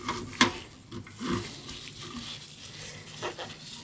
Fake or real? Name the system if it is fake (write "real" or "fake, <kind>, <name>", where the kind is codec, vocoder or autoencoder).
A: real